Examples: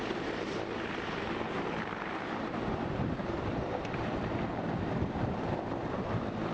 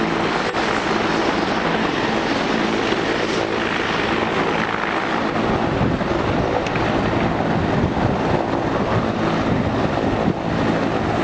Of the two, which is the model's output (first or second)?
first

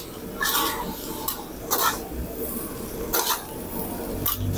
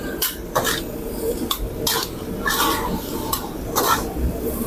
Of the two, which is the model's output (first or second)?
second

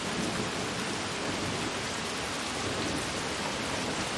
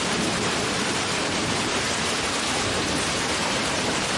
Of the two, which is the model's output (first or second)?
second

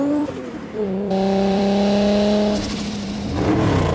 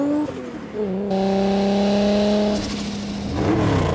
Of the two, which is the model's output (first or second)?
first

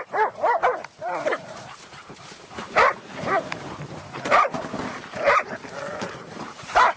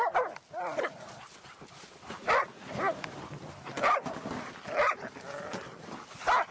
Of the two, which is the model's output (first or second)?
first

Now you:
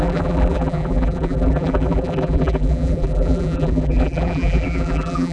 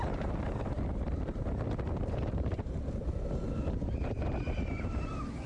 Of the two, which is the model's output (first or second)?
first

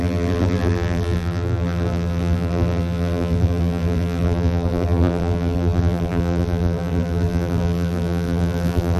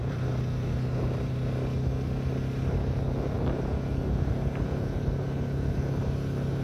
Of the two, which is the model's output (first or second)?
first